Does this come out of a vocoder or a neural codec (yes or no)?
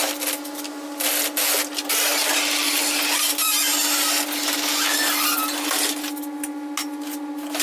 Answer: no